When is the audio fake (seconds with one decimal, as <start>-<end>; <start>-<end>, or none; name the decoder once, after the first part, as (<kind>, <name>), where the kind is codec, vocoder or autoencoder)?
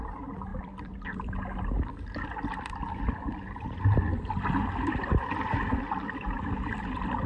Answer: 4.1-7.3 (vocoder, BigVGAN v2)